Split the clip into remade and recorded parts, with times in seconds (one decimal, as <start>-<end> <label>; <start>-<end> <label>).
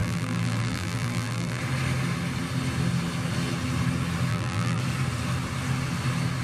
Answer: 0.0-1.6 remade; 1.6-4.3 recorded; 4.3-4.8 remade; 4.8-6.4 recorded